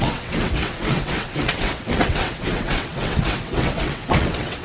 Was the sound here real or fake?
fake